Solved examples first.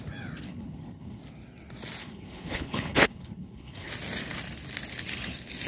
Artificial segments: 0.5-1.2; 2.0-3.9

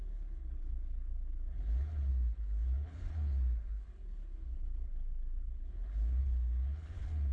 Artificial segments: 0.0-7.3

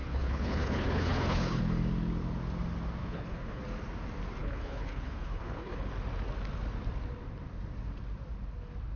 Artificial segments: 0.0-1.6; 3.0-3.6; 4.4-5.9

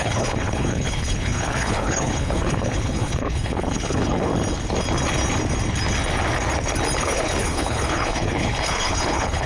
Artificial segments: 0.0-4.3; 7.0-9.5

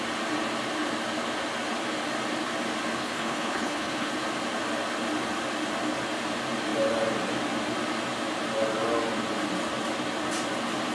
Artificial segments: 3.0-4.1

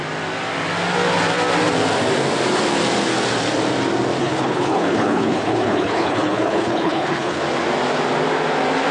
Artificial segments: 4.2-7.4